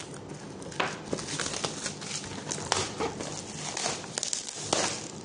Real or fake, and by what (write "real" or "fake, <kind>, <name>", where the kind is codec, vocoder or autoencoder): real